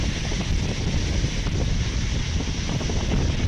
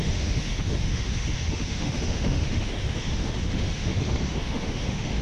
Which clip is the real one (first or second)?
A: first